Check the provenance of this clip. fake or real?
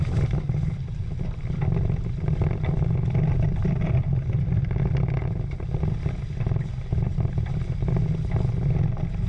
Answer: real